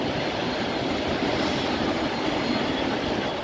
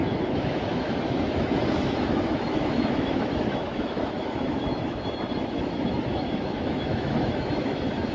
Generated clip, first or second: second